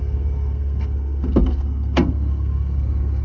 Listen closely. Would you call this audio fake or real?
fake